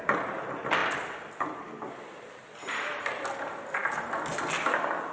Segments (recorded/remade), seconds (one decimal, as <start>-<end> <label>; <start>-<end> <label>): 0.0-5.1 recorded